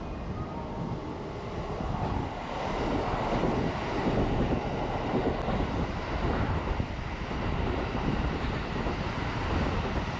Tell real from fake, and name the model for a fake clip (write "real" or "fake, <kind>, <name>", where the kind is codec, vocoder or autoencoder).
real